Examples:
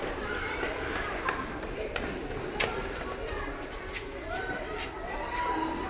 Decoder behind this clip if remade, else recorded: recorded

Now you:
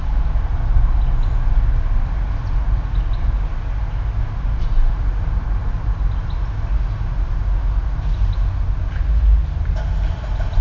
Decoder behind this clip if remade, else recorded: recorded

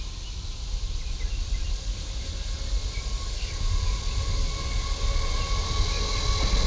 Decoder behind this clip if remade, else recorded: recorded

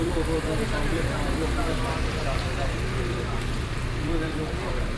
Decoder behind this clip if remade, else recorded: remade, vocoder, BigVGAN v2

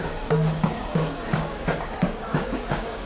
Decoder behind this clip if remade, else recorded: remade, codec, DAC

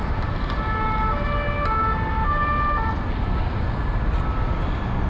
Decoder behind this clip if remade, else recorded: recorded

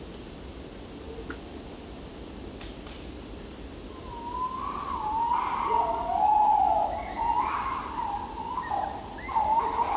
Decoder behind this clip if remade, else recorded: recorded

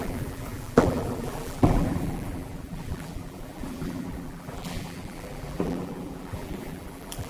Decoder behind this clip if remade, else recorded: remade, vocoder, BigVGAN v2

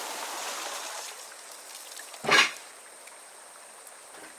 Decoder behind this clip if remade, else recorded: recorded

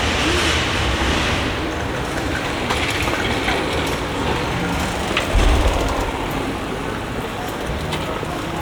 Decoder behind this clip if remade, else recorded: recorded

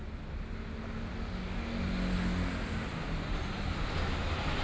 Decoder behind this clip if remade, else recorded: recorded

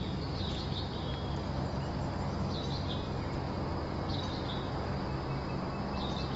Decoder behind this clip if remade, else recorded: recorded